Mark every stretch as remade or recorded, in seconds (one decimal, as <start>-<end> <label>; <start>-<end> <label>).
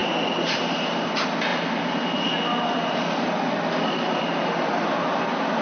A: 0.0-5.6 recorded